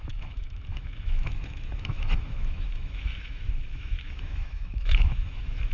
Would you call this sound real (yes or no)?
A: no